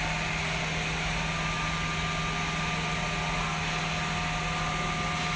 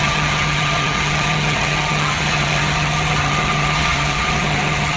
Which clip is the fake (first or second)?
second